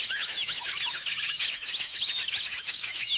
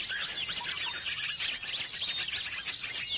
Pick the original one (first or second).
second